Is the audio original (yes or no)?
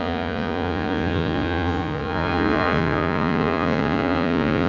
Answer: no